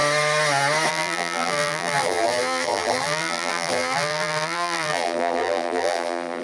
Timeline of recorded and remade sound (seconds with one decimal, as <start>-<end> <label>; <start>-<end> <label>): 0.0-0.9 recorded; 0.9-6.4 remade

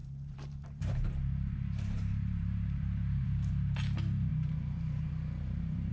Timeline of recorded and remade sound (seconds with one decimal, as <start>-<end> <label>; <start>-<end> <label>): 0.0-3.5 remade; 3.5-4.3 recorded; 4.3-5.9 remade

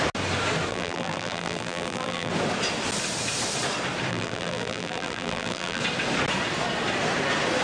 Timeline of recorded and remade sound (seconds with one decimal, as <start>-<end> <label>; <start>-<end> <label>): 0.0-0.7 recorded; 0.7-2.3 remade; 2.3-4.1 recorded; 4.1-5.8 remade; 5.8-7.6 recorded